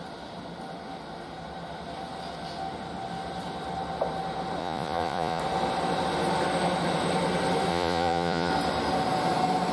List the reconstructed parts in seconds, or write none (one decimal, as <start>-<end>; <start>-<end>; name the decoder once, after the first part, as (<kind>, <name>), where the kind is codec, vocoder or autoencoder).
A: 4.6-5.4 (vocoder, Vocos); 7.7-8.5